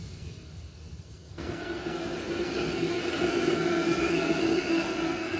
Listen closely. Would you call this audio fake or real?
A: fake